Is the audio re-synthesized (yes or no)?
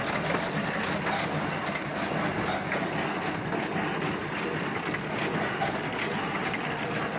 no